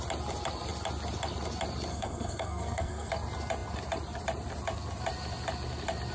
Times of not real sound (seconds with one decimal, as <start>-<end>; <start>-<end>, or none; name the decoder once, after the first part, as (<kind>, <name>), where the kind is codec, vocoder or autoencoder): 1.9-3.1 (codec, SNAC)